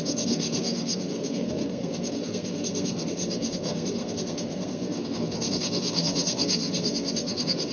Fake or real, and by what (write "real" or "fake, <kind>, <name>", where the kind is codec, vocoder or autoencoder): fake, codec, SNAC